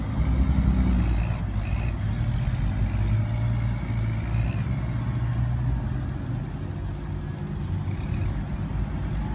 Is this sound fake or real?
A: real